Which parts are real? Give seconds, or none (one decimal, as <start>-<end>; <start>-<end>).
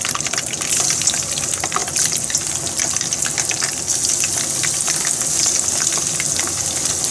0.0-7.1